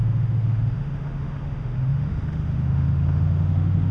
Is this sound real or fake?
fake